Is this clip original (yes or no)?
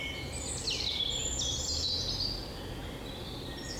yes